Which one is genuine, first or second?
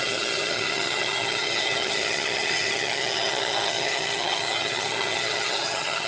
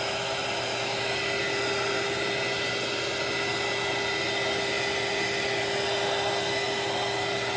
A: second